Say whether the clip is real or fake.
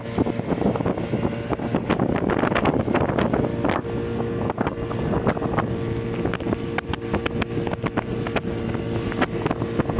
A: real